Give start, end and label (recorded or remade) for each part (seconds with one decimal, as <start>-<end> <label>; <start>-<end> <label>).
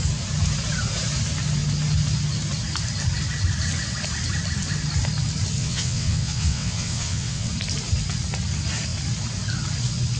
0.0-5.6 recorded; 5.6-7.5 remade; 7.5-10.2 recorded